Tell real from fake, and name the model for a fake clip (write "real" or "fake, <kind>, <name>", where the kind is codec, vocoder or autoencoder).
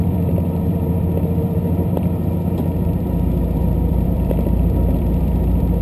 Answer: fake, vocoder, BigVGAN v2